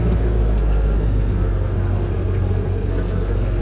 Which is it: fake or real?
fake